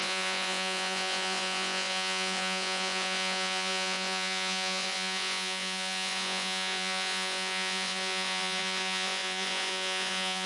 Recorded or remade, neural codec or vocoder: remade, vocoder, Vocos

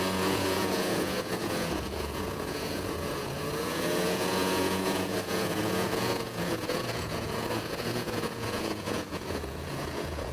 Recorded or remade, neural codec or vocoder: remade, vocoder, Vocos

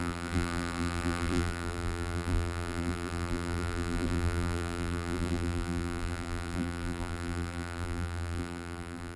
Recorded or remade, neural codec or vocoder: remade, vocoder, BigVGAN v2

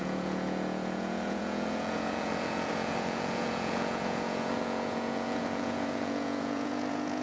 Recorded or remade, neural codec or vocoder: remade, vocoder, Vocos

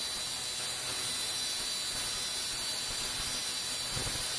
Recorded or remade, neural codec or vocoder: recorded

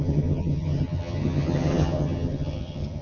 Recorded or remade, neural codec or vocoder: remade, vocoder, HiFi-GAN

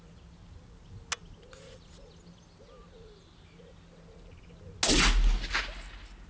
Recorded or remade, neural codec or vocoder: recorded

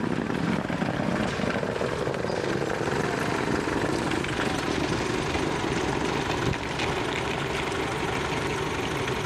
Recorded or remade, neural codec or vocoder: recorded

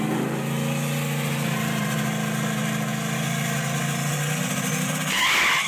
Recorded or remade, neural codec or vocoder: recorded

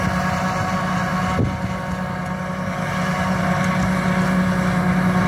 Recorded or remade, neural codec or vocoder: recorded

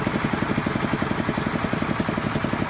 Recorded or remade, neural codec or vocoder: recorded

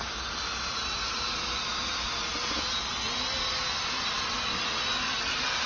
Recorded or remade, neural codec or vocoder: recorded